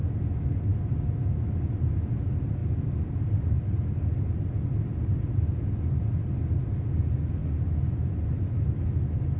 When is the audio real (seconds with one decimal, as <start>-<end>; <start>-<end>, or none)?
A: 0.0-9.4